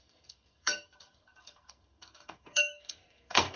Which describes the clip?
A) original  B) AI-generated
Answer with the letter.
B